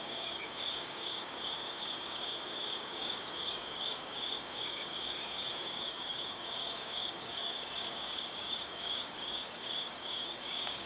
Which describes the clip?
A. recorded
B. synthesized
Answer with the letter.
B